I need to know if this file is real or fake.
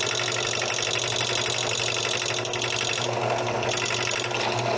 real